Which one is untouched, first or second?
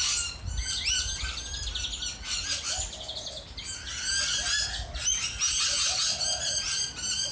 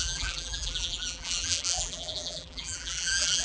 first